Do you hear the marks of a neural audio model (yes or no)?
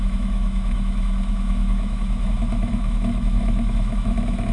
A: yes